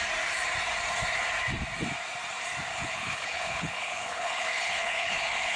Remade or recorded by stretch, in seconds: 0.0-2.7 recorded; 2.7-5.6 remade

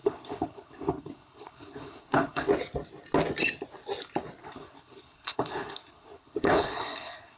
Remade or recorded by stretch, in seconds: 0.0-2.5 remade; 2.5-4.4 recorded; 4.4-7.4 remade

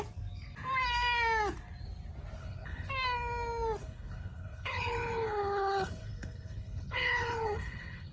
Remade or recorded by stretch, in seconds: 0.0-2.4 recorded; 2.4-2.9 remade; 2.9-3.8 recorded; 3.8-8.1 remade